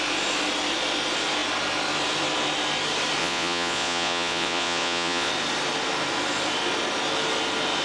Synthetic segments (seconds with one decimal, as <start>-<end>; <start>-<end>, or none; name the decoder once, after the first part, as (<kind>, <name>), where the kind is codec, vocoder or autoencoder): 3.2-5.3 (vocoder, Vocos)